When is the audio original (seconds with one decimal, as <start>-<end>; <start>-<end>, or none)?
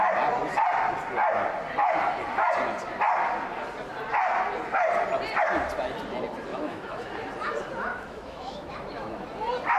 0.0-6.5; 7.1-7.9; 9.2-9.8